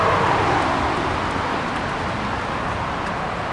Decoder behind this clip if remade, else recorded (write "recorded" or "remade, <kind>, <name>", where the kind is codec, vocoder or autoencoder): recorded